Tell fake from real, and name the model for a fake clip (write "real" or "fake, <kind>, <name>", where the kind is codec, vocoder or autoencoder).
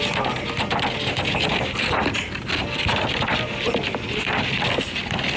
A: real